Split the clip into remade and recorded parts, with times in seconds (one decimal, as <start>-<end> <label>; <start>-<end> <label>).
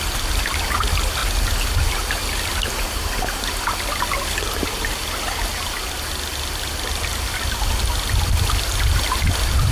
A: 0.0-9.7 recorded